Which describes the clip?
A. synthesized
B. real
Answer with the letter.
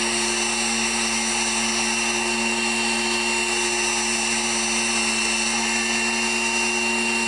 B